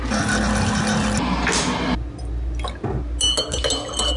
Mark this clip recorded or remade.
recorded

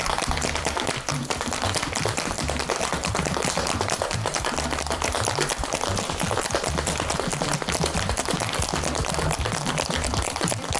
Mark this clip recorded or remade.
remade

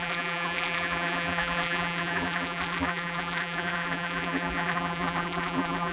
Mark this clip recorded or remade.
remade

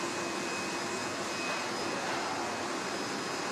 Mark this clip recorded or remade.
recorded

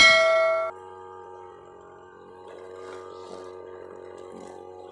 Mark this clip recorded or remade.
recorded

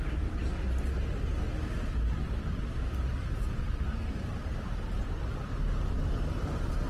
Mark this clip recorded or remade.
recorded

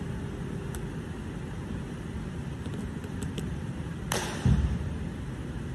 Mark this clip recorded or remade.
recorded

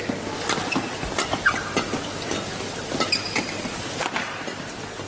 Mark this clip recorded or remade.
recorded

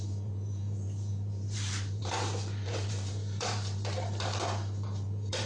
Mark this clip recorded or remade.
remade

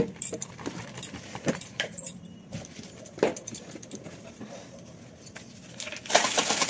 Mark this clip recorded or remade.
remade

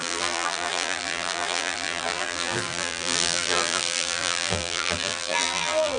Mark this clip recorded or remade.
remade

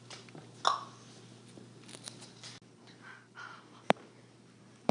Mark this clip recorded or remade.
recorded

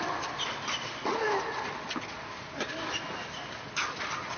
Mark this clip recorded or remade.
recorded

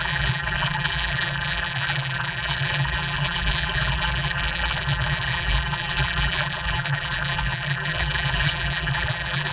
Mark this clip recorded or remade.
remade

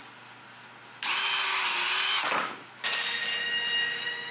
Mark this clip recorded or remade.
recorded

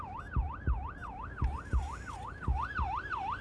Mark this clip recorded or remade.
remade